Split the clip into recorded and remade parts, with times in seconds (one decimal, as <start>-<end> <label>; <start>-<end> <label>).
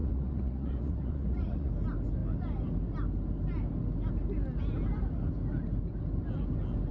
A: 0.0-1.7 remade; 1.7-6.9 recorded